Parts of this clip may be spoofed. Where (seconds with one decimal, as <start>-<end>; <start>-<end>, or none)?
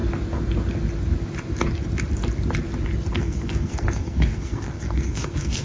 3.1-5.6